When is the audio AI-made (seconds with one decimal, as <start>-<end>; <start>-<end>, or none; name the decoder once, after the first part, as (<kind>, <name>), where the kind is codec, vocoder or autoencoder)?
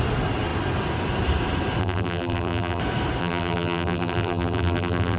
1.8-2.8 (vocoder, BigVGAN v2); 3.2-5.2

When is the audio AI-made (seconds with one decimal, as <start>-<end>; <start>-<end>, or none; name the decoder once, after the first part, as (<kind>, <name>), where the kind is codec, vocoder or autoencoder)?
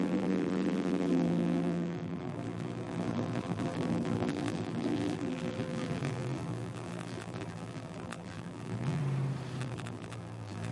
0.0-9.0 (vocoder, BigVGAN v2); 9.6-10.7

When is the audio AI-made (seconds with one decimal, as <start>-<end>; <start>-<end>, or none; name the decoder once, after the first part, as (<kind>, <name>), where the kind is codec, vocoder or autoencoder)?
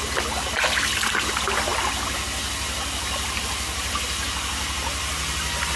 none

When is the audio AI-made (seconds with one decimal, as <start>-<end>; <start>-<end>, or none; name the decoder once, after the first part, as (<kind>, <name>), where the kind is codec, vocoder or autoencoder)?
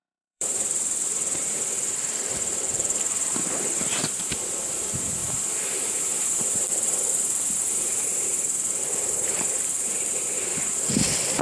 0.0-10.5 (vocoder, BigVGAN v2)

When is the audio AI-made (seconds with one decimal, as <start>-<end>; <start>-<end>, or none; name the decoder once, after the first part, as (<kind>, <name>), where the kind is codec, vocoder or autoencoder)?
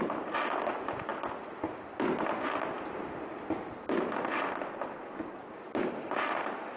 none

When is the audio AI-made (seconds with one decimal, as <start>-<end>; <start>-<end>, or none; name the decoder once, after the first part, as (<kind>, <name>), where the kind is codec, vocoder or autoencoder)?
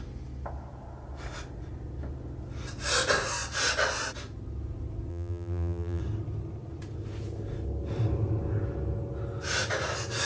5.1-6.0 (vocoder, BigVGAN v2)